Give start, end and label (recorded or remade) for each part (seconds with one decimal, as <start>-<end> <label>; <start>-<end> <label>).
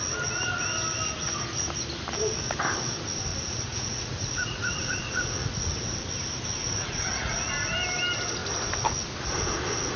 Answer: 0.0-3.3 recorded; 3.3-5.5 remade; 5.5-6.6 recorded; 6.6-7.5 remade; 7.5-10.0 recorded